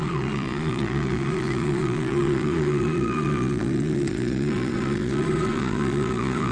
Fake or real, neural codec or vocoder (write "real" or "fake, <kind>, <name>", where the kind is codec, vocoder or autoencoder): fake, vocoder, Vocos